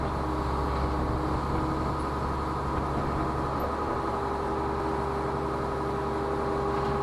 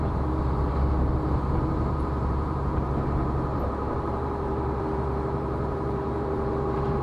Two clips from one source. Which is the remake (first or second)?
second